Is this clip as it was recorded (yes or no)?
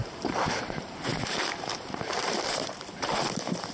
no